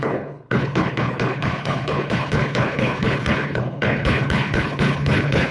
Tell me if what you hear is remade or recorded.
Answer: remade